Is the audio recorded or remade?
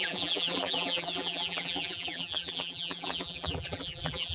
remade